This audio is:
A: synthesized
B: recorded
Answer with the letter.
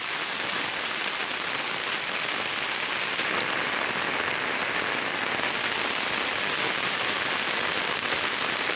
B